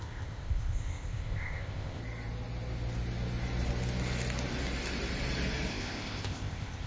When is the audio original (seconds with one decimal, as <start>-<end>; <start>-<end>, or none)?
2.0-5.7

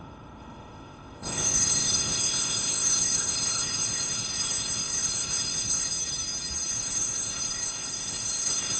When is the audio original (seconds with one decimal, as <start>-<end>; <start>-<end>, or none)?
5.9-6.7

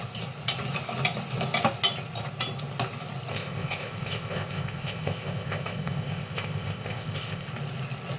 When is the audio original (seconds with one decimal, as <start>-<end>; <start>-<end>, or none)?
0.0-3.3; 7.5-8.2

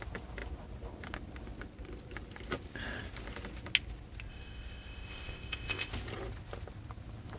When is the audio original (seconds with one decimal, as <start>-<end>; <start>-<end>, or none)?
0.0-4.3; 5.9-7.4

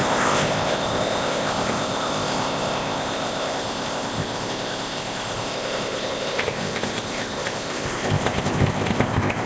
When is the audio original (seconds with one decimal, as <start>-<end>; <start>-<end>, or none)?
none

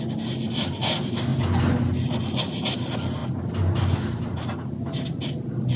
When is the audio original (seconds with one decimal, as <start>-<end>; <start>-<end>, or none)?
0.0-5.8